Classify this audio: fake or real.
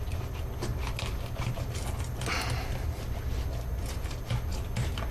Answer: real